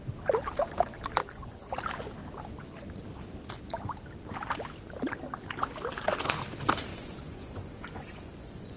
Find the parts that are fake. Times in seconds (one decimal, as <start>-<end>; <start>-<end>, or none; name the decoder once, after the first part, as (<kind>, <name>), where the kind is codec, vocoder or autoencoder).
1.2-1.7 (vocoder, Vocos); 6.9-8.8